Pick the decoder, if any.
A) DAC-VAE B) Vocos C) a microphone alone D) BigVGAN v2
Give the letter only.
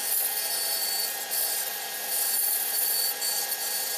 D